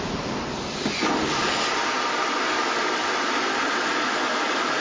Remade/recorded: recorded